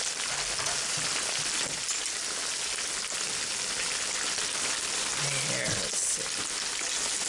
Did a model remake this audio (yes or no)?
no